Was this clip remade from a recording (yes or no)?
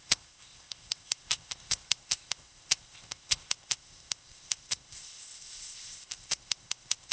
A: yes